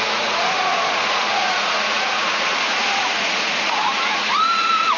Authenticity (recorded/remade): remade